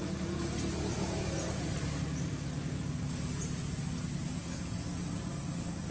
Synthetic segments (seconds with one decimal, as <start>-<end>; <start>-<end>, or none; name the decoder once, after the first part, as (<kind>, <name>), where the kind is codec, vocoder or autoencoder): none